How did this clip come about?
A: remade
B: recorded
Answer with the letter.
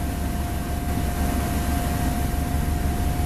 B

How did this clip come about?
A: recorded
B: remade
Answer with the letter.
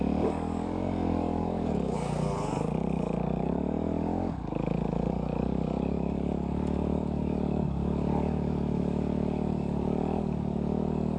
B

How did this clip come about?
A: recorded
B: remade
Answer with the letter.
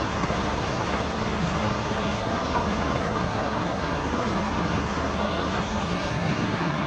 B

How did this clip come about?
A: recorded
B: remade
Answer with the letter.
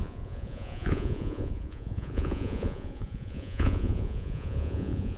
B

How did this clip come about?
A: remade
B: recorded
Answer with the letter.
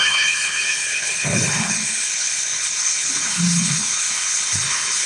A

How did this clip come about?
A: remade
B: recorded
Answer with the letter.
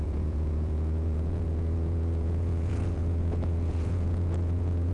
A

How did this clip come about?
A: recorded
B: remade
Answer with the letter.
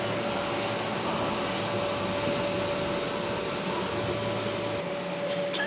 A